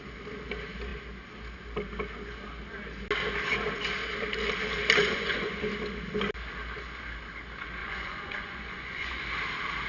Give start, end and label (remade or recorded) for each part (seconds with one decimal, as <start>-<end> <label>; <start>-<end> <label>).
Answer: 0.0-5.0 recorded; 5.0-5.7 remade; 5.7-7.8 recorded; 7.8-9.2 remade; 9.2-9.9 recorded